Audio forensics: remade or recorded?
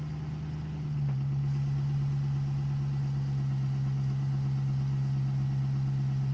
recorded